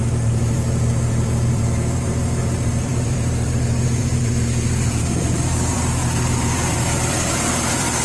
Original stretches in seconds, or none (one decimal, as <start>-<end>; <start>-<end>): none